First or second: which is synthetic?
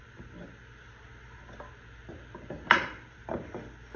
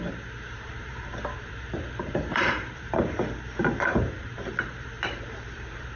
second